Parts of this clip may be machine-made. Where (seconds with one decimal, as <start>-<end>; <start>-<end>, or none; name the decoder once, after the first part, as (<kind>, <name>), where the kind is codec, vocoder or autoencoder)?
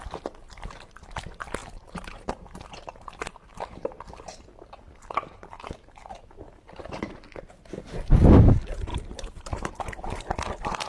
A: 1.6-3.1 (vocoder, BigVGAN v2); 3.5-4.4; 8.9-9.7